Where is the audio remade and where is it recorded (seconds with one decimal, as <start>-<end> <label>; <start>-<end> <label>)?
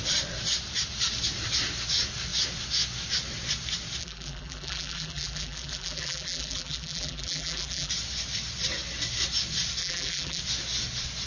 0.0-4.0 recorded; 4.0-7.9 remade; 7.9-9.8 recorded; 9.8-10.4 remade; 10.4-11.3 recorded